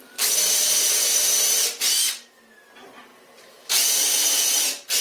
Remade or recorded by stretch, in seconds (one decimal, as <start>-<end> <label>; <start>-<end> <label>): 0.0-5.0 recorded